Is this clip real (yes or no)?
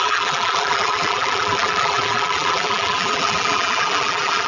no